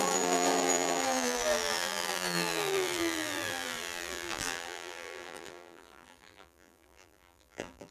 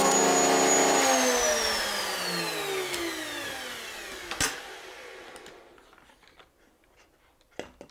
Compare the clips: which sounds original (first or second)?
second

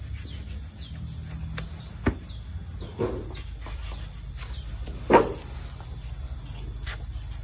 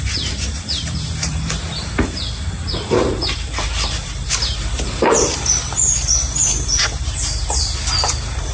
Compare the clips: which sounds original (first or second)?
first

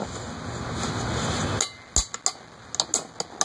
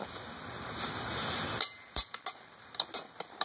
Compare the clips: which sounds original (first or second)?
first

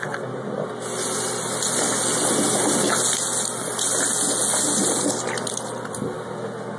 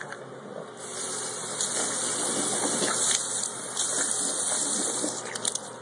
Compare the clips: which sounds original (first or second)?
first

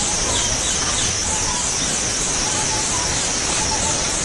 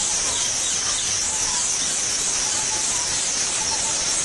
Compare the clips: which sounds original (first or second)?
first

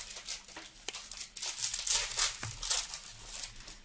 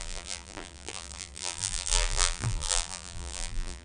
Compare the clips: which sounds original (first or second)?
first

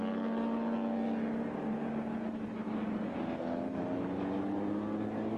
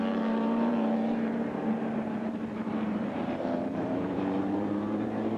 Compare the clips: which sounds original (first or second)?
first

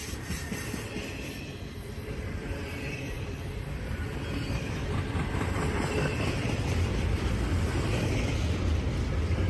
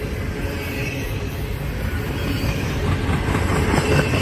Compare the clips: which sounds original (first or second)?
second